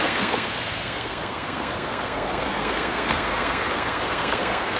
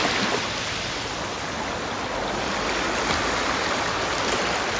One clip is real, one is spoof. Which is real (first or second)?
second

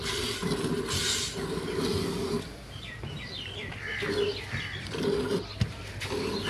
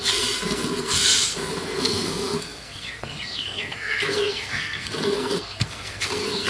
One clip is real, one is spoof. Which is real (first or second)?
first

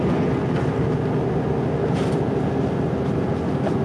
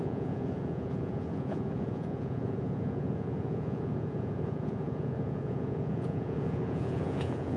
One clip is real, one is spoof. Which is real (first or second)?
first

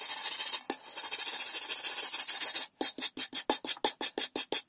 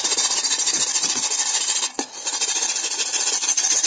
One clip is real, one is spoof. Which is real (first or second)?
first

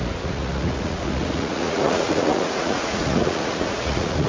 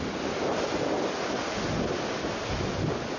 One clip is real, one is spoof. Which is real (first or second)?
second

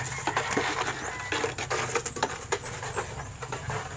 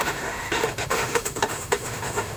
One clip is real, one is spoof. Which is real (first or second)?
first